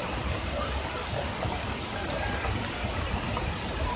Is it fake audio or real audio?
real